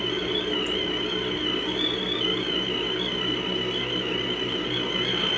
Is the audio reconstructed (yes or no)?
no